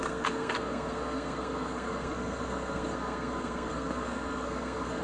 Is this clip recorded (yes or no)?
no